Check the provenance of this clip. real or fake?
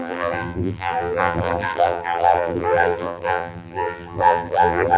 fake